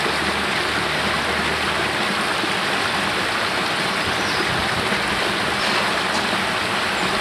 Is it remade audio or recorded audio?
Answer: recorded